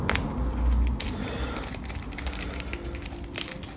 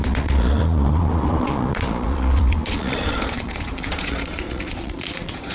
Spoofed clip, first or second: second